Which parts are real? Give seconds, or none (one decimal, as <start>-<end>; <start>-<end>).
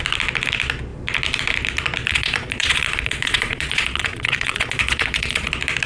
0.0-2.1; 5.5-5.9